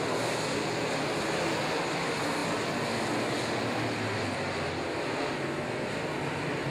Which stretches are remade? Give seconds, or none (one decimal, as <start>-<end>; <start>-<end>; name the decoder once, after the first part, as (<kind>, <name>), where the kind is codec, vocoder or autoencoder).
none